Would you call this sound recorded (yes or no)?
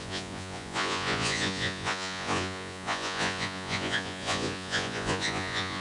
no